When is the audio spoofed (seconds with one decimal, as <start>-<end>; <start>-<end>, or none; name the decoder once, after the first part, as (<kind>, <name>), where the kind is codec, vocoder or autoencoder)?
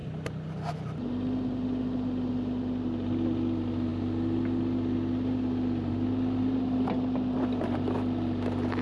none